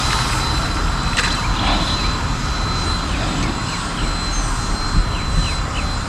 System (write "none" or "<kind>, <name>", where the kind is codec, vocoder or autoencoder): none